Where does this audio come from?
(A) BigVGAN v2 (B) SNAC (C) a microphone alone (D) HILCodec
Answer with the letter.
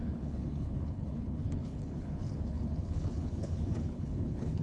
D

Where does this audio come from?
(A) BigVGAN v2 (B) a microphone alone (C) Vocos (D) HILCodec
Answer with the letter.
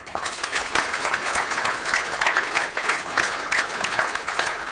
D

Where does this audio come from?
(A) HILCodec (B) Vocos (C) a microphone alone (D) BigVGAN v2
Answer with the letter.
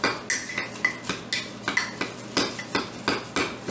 C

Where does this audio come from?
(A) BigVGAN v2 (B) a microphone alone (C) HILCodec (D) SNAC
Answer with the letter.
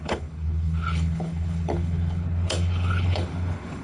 C